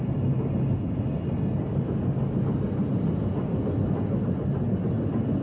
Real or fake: real